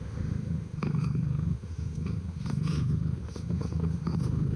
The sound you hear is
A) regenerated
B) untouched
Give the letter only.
A